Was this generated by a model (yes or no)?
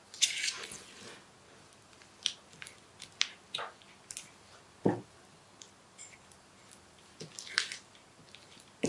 no